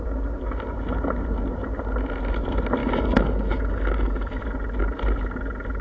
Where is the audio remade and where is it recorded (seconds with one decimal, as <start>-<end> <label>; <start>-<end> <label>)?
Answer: 0.0-2.8 recorded; 2.8-4.4 remade; 4.4-5.8 recorded